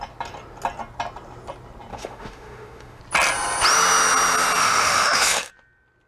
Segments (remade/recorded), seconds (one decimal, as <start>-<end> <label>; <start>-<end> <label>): 0.0-1.9 recorded; 1.9-3.0 remade; 3.0-4.6 recorded; 4.6-5.5 remade; 5.5-6.1 recorded